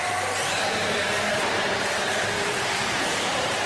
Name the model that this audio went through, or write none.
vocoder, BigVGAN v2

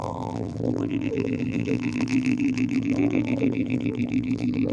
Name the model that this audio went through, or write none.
vocoder, BigVGAN v2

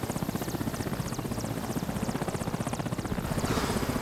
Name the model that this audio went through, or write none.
vocoder, BigVGAN v2